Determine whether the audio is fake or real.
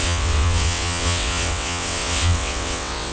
fake